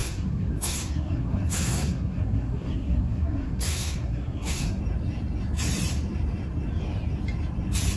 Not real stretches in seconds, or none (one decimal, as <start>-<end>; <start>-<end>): 0.0-4.8